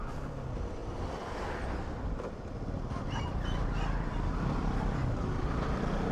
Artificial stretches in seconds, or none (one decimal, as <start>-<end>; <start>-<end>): none